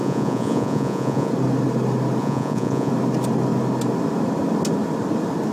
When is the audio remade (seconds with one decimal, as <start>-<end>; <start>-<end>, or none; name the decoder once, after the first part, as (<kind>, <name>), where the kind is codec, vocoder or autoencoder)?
0.0-1.3 (vocoder, Vocos); 2.2-2.9

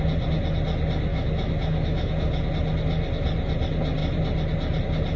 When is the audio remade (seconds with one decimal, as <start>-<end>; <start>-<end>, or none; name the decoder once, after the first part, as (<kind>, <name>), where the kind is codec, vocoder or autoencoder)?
1.1-2.5 (autoencoder, DAC-VAE)

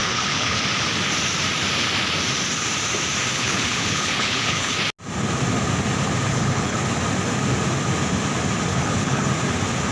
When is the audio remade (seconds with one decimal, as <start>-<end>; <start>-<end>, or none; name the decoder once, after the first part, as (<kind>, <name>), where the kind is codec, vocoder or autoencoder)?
0.0-0.6 (codec, HILCodec); 3.3-4.7; 6.3-6.8; 8.7-9.3